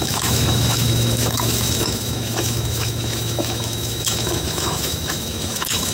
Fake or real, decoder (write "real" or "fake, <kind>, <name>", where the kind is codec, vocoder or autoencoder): fake, autoencoder, DAC-VAE